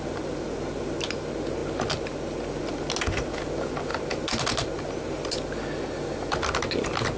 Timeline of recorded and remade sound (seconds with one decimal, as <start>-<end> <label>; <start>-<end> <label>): 0.0-7.2 recorded